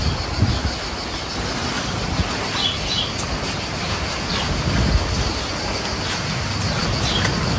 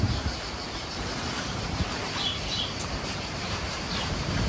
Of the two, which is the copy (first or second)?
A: second